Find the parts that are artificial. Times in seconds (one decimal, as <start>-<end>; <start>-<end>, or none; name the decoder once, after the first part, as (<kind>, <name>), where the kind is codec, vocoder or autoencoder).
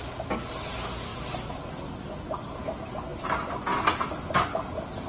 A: none